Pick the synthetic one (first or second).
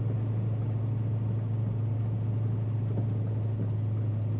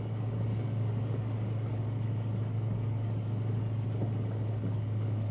second